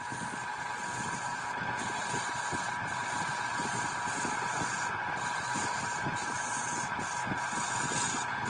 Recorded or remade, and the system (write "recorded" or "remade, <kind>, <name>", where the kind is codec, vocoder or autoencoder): recorded